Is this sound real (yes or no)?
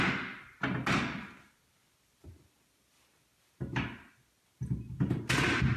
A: yes